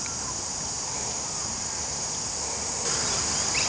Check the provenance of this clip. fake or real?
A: real